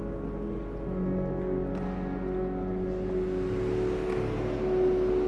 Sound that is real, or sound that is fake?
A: real